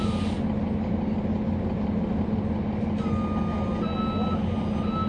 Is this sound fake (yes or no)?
no